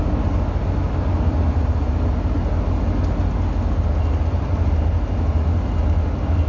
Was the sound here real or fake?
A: real